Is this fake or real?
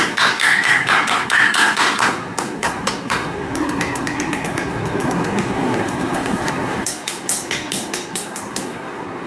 fake